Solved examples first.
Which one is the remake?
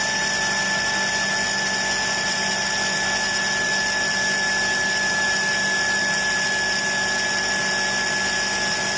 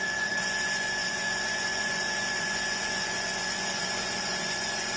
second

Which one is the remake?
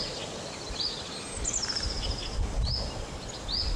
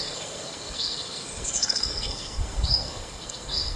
second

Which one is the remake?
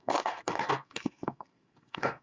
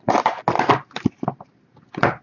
first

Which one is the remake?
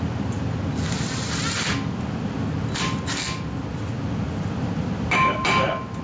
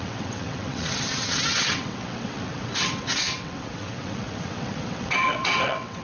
second